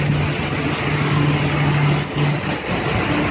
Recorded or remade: recorded